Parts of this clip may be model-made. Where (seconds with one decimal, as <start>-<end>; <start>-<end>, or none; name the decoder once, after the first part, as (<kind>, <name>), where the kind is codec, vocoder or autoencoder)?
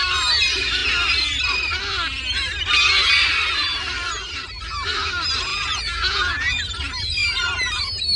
5.5-6.6 (vocoder, Vocos)